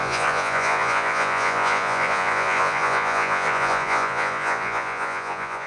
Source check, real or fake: fake